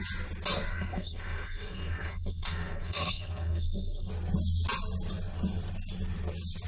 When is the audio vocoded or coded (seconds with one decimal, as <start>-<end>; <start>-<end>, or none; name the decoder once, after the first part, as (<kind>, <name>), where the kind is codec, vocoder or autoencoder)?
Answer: 0.7-4.1 (codec, SNAC)

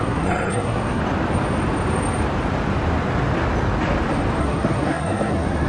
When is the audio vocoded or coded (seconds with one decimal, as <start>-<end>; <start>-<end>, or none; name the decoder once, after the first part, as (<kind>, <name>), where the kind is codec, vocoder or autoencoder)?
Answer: 0.0-1.0 (codec, SNAC); 4.4-5.7

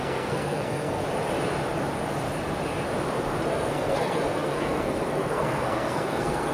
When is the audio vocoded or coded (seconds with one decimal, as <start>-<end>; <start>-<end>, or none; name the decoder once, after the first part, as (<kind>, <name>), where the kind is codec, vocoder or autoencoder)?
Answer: 0.0-1.0 (codec, SNAC); 3.5-6.5

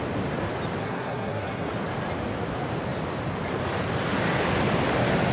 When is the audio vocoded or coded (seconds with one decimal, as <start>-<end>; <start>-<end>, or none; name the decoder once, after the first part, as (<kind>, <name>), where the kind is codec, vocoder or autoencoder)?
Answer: 0.8-1.7 (codec, SNAC)

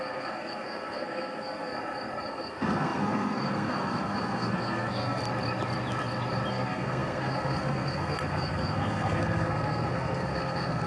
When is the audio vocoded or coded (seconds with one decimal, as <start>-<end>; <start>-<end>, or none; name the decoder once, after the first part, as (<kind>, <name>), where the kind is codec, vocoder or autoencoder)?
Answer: 0.0-1.7 (codec, SNAC); 2.3-5.2; 6.5-10.9

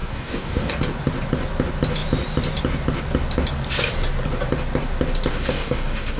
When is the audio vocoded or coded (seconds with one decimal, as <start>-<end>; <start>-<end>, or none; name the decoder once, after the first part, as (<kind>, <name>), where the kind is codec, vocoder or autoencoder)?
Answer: 0.0-0.8 (codec, DAC); 5.3-6.2

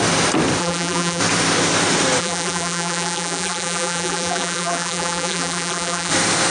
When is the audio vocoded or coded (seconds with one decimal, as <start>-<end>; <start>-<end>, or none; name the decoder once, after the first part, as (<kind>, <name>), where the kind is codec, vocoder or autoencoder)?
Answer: 0.6-1.2 (vocoder, BigVGAN v2); 2.2-6.1